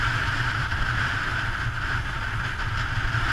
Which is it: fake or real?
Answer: real